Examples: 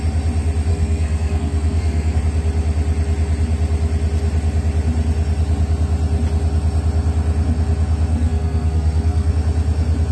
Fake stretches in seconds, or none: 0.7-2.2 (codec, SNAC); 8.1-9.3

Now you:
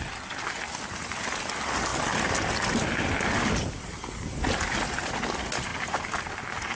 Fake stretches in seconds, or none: none

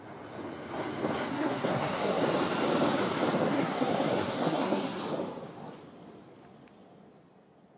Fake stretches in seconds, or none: 1.3-2.2 (codec, SNAC); 3.5-5.0

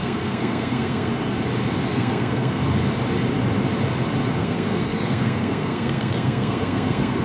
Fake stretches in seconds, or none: 0.0-1.1 (codec, SNAC); 1.9-2.6; 4.4-7.2